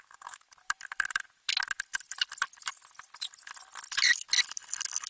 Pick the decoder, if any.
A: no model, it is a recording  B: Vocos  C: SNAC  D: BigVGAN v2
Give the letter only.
D